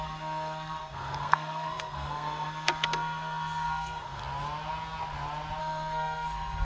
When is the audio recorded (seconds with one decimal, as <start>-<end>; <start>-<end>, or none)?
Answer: 4.2-5.6